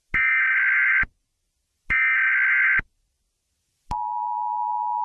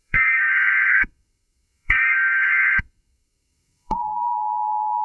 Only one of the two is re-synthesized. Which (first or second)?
second